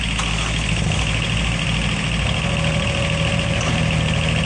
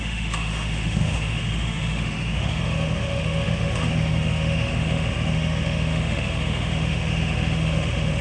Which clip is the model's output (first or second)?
second